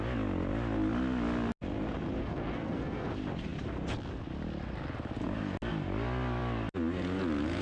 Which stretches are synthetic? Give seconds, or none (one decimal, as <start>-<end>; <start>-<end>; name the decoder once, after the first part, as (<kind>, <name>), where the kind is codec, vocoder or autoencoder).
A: 2.2-3.1 (codec, SNAC)